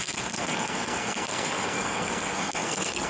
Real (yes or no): no